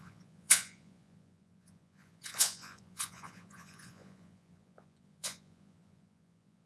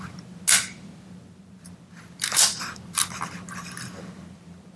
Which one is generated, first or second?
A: first